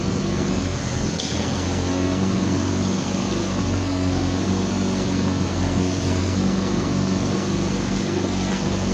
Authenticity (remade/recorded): remade